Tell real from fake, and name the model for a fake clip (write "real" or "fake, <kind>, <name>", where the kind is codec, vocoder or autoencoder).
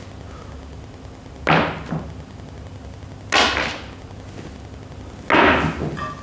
real